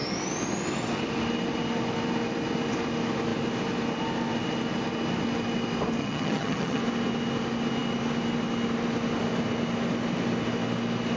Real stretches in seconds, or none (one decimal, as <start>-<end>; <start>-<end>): 0.0-6.0; 6.8-11.2